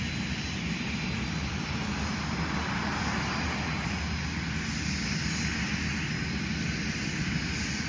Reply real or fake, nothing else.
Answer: real